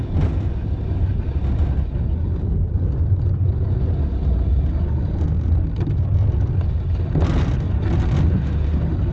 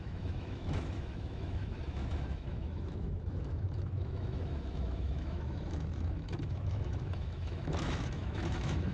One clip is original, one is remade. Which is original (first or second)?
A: first